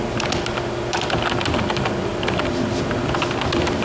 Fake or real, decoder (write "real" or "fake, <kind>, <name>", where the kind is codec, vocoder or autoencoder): real